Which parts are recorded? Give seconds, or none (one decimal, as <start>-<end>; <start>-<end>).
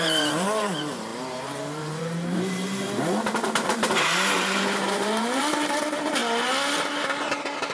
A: 6.2-7.7